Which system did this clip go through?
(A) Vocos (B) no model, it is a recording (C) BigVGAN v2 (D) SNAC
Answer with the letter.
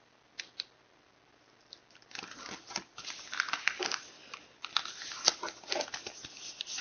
B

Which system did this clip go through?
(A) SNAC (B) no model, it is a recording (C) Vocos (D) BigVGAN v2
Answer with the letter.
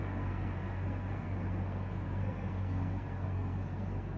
A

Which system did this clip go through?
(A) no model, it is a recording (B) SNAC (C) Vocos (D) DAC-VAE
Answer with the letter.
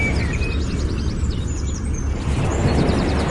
A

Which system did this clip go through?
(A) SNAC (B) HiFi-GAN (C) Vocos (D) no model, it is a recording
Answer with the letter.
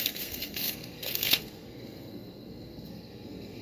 A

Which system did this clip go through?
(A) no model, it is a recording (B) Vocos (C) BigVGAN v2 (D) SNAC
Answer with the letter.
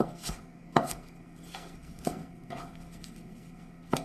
D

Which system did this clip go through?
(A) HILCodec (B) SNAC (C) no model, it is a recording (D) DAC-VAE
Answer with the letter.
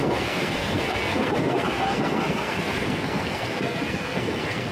B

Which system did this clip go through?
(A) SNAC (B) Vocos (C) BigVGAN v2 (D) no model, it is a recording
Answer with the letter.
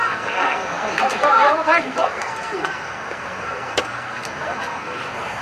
A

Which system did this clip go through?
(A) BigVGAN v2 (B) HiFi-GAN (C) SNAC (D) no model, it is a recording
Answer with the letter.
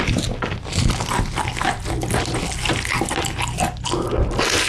D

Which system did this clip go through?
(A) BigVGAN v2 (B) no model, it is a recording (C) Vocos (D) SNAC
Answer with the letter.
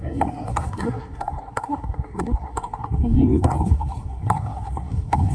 D